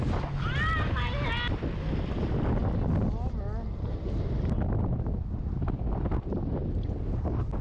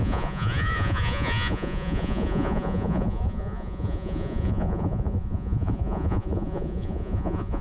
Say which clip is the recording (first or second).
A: first